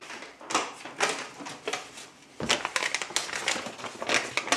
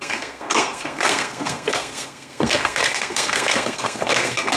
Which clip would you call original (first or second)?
first